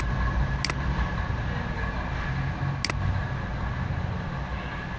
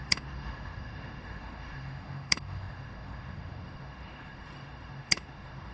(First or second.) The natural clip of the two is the first